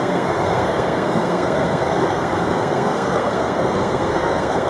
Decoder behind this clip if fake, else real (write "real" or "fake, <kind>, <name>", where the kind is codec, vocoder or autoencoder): fake, codec, SNAC